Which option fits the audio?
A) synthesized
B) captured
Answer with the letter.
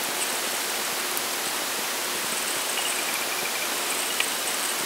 B